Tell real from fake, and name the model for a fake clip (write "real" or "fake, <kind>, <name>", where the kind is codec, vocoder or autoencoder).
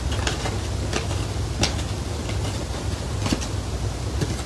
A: real